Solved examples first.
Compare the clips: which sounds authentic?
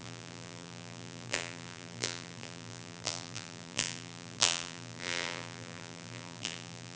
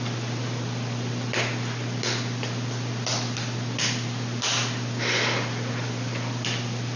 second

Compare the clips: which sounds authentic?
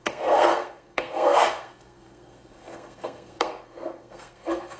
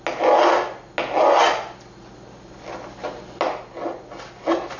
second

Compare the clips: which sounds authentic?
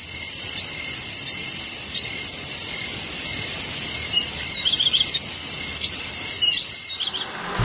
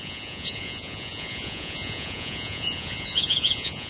first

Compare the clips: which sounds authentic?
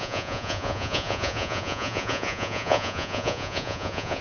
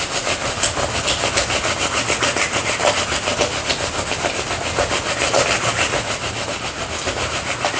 second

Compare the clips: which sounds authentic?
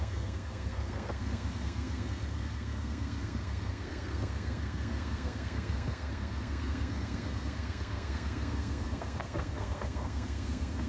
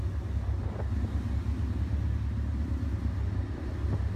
second